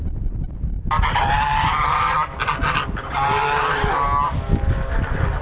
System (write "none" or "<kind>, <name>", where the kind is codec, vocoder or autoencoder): none